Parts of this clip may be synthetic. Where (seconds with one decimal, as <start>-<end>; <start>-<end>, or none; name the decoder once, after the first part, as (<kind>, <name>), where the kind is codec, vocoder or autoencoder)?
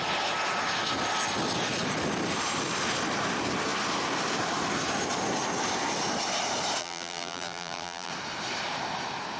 6.8-8.1 (vocoder, BigVGAN v2)